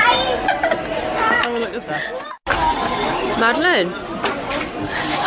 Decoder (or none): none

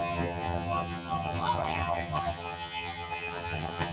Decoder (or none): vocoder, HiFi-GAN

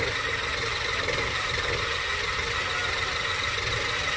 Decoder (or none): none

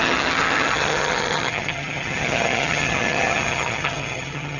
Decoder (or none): vocoder, HiFi-GAN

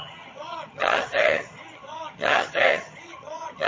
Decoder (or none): vocoder, HiFi-GAN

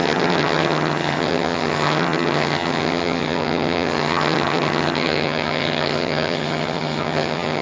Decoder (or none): vocoder, HiFi-GAN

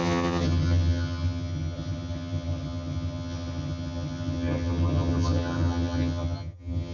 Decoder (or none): vocoder, HiFi-GAN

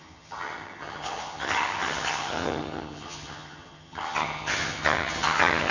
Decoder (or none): vocoder, HiFi-GAN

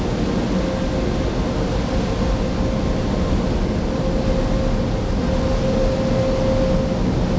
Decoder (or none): none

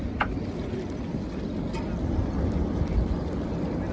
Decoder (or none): none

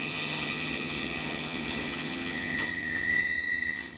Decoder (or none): vocoder, HiFi-GAN